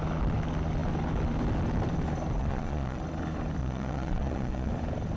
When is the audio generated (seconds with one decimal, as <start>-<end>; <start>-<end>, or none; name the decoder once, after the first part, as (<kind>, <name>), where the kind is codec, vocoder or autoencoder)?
2.4-3.0 (vocoder, Vocos); 3.6-4.7